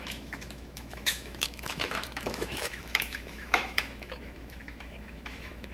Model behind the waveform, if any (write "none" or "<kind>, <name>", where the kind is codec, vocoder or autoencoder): autoencoder, DAC-VAE